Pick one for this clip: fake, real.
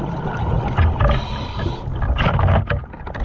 real